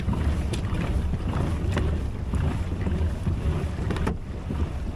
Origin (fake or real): fake